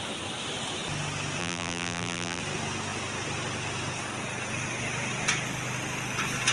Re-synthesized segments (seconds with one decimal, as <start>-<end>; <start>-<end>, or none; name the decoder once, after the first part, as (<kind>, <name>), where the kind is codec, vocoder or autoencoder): 1.4-2.4 (vocoder, BigVGAN v2)